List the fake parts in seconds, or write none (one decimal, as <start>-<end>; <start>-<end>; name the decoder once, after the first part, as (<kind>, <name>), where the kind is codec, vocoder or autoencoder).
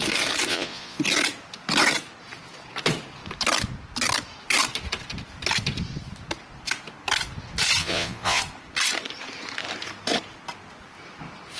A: 0.5-1.0 (vocoder, Vocos); 7.8-8.4